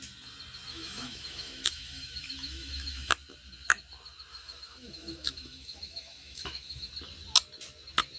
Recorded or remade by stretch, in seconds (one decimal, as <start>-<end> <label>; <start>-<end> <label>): 0.0-0.7 recorded; 0.7-3.1 remade; 3.1-4.3 recorded; 4.3-6.9 remade; 6.9-8.2 recorded